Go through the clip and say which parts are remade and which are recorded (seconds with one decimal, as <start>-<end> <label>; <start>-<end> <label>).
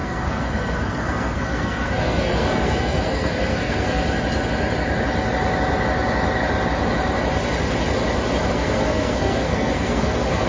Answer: 0.0-4.0 remade; 4.0-8.5 recorded; 8.5-10.5 remade